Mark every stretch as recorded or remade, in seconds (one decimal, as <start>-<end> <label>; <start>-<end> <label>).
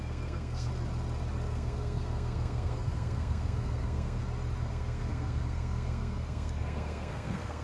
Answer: 0.0-0.7 remade; 0.7-1.5 recorded; 1.5-4.2 remade; 4.2-4.7 recorded; 4.7-7.6 remade